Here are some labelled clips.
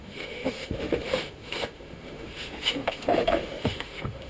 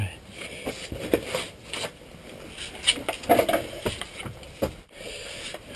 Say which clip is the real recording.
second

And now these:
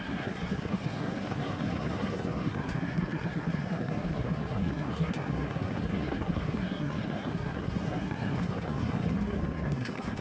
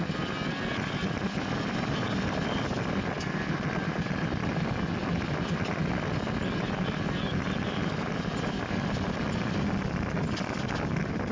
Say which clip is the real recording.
second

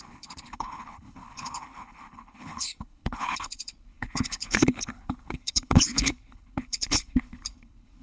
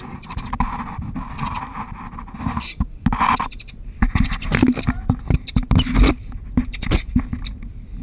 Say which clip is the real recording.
second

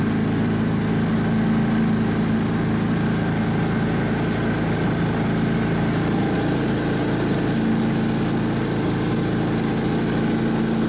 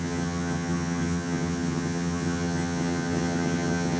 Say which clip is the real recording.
first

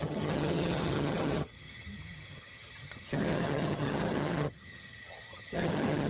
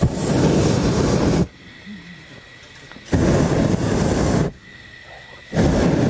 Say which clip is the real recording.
second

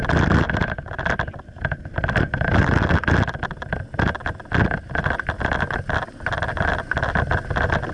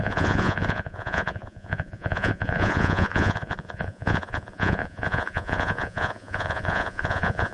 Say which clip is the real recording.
first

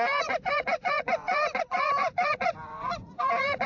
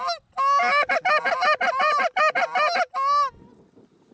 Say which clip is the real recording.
second